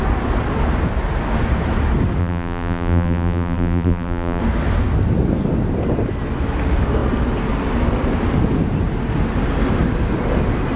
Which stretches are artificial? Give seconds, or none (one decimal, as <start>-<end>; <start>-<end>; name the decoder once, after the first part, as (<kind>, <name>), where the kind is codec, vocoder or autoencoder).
2.2-4.4 (vocoder, BigVGAN v2)